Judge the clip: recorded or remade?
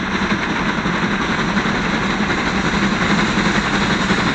recorded